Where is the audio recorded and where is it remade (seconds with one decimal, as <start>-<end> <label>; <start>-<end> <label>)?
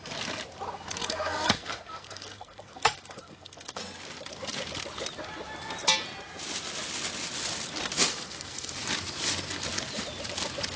0.0-1.0 recorded; 1.0-3.8 remade; 3.8-8.1 recorded; 8.1-8.7 remade; 8.7-10.8 recorded